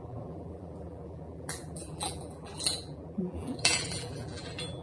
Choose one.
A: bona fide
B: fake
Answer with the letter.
B